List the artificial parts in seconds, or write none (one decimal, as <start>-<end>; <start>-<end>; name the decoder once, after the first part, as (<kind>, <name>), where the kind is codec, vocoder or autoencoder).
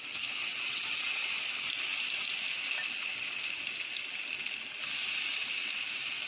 0.5-1.3 (vocoder, WaveNeXt)